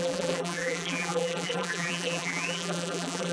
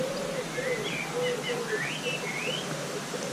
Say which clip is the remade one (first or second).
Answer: first